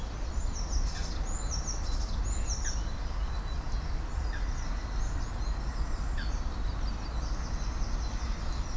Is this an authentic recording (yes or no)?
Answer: yes